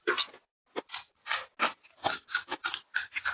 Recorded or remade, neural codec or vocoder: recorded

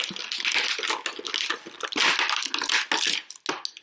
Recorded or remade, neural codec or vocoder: recorded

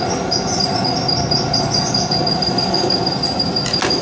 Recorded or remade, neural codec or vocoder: recorded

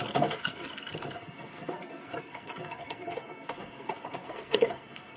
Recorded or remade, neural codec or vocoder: remade, codec, SNAC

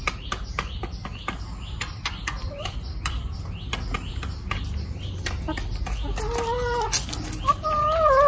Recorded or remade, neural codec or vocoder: recorded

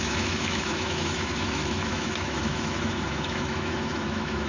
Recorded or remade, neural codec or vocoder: remade, autoencoder, DAC-VAE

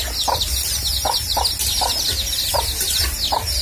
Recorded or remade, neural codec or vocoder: recorded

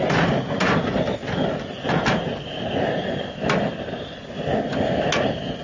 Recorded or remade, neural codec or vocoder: recorded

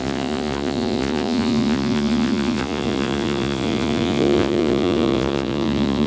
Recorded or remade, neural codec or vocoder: remade, vocoder, Vocos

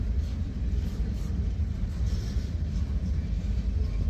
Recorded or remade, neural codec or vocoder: recorded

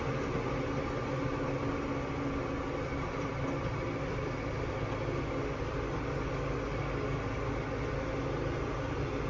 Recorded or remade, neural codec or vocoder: recorded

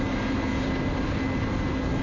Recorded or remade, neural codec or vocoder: recorded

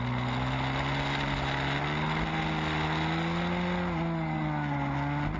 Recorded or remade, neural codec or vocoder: recorded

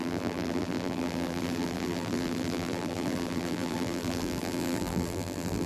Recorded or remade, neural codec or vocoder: remade, vocoder, BigVGAN v2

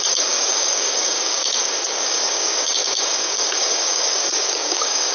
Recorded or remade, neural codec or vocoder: remade, codec, DAC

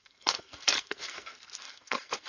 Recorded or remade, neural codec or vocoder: remade, codec, SNAC